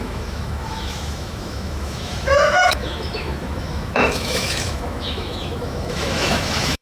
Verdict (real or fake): fake